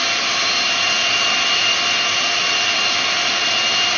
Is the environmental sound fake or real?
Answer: real